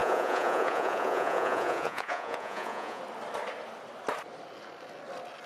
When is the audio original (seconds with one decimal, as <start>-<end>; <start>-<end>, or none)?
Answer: 3.0-5.5